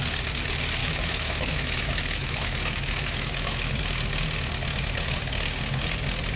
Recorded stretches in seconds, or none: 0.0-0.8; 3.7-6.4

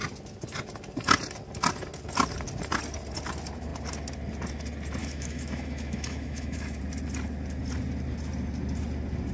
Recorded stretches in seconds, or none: 0.0-5.0; 6.8-9.3

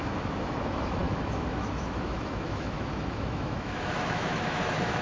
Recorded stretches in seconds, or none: none

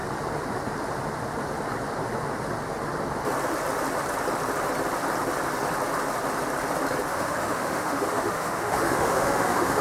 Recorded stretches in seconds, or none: 0.0-7.1

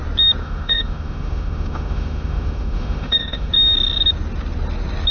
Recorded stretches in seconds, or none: 0.0-0.4; 3.5-5.1

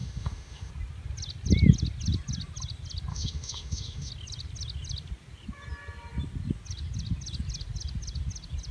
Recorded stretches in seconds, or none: 0.7-3.1; 4.1-8.7

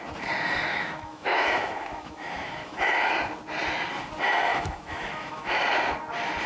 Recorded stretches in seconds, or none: 0.0-0.7; 3.1-4.5; 5.5-6.5